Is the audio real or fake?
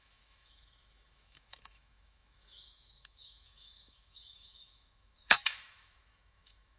fake